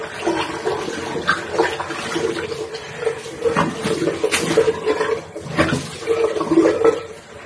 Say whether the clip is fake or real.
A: real